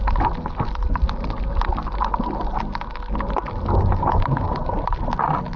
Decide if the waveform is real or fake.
real